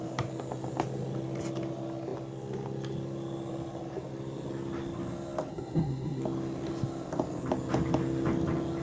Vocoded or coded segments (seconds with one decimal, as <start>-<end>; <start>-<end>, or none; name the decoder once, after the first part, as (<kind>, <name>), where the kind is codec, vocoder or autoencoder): 5.5-6.2 (codec, SNAC)